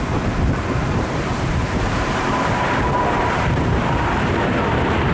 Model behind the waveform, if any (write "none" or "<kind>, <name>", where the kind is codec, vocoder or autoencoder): vocoder, BigVGAN v2